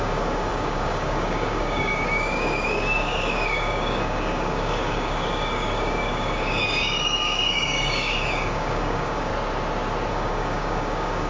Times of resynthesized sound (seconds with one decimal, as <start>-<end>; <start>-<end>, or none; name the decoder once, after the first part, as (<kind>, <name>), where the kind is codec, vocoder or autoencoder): 0.0-9.3 (codec, DAC); 10.1-11.3